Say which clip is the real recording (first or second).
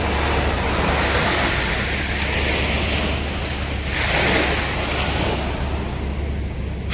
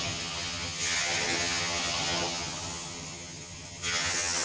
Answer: first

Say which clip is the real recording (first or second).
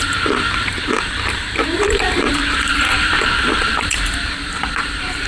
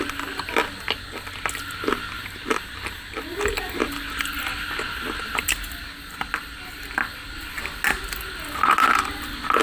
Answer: second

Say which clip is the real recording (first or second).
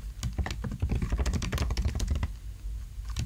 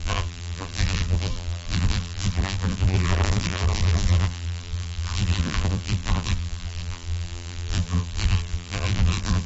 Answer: first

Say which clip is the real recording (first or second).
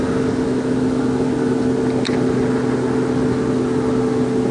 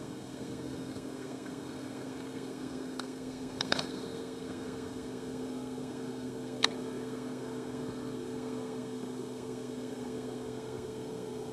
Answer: first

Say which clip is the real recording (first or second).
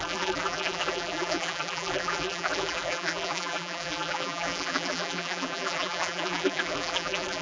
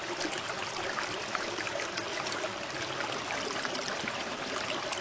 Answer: second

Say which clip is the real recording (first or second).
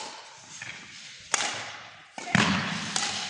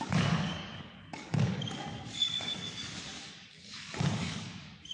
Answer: first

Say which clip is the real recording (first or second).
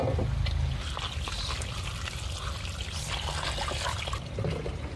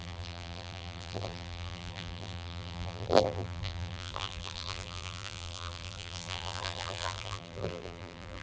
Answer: first